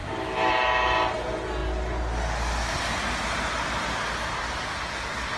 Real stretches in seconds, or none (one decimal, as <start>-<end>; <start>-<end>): 0.5-5.4